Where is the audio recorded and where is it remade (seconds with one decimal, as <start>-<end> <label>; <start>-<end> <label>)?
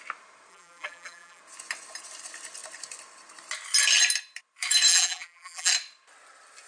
0.0-0.5 recorded; 0.5-1.4 remade; 1.4-4.9 recorded; 4.9-5.7 remade; 5.7-6.7 recorded